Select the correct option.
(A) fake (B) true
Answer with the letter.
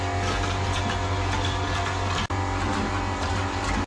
B